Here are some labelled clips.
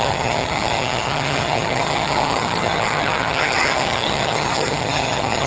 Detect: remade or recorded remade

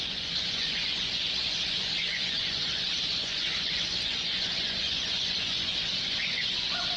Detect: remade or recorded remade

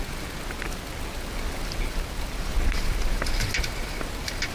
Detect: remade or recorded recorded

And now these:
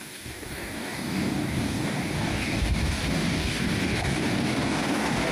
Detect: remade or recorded remade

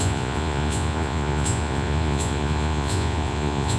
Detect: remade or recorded remade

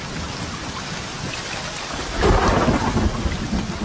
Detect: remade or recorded recorded